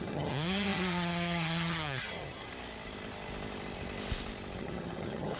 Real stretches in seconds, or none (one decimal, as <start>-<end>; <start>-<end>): 2.5-4.6